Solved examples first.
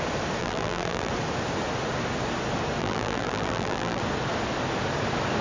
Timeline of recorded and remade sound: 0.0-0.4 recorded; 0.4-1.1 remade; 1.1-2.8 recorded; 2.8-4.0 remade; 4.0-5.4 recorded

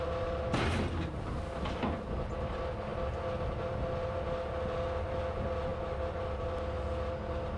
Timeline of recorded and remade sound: 0.0-7.6 recorded

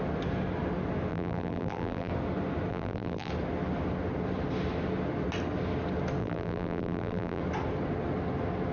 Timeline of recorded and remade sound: 0.0-1.1 recorded; 1.1-2.1 remade; 2.1-2.7 recorded; 2.7-3.3 remade; 3.3-6.2 recorded; 6.2-7.4 remade; 7.4-8.7 recorded

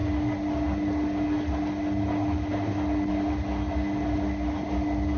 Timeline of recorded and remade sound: 0.0-5.2 recorded

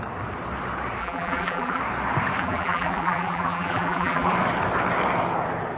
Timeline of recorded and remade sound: 0.0-1.0 recorded; 1.0-1.8 remade; 1.8-2.4 recorded; 2.4-4.3 remade; 4.3-5.8 recorded

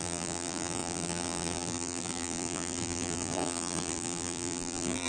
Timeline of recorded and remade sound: 0.0-5.1 remade